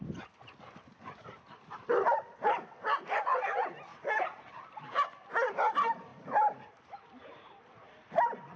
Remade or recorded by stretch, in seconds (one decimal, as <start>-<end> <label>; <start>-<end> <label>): 0.0-3.9 recorded; 3.9-4.5 remade; 4.5-8.6 recorded